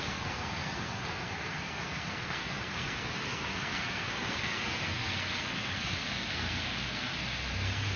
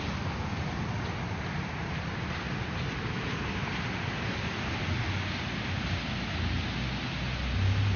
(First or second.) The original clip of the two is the second